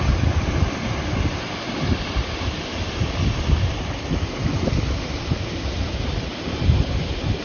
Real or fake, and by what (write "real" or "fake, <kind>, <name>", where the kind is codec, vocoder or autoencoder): real